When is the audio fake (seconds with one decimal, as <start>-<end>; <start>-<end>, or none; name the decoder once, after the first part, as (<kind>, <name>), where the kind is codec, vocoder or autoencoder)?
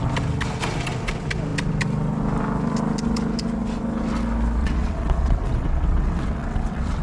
4.6-7.0 (vocoder, WaveNeXt)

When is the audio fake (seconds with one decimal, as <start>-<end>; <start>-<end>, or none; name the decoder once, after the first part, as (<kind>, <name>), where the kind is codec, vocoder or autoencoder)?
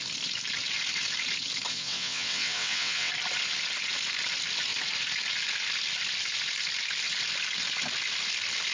1.7-3.1 (vocoder, WaveNeXt)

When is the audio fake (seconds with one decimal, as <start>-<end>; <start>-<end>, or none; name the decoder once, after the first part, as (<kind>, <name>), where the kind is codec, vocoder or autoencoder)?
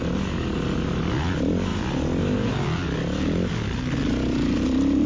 none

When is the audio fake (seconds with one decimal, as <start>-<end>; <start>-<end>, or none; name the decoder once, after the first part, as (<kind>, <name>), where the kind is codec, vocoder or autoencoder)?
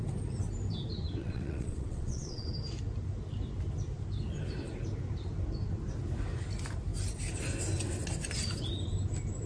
1.2-2.5 (vocoder, WaveNeXt)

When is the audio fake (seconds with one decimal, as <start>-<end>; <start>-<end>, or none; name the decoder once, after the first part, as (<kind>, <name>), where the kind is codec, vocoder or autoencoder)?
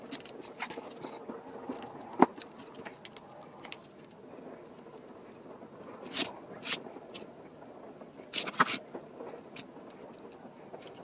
none